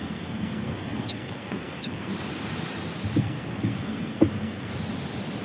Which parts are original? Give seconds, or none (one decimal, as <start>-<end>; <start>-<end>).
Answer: 2.1-3.2; 4.7-5.4